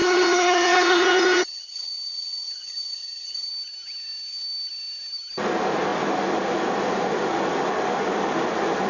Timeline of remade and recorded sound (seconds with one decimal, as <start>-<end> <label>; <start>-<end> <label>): 0.0-3.5 remade; 3.5-8.9 recorded